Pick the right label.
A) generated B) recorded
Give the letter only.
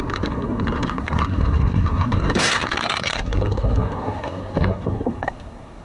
A